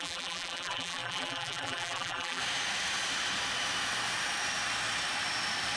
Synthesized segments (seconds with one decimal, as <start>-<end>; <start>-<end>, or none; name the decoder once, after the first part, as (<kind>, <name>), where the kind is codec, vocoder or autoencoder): 0.0-2.4 (vocoder, BigVGAN v2)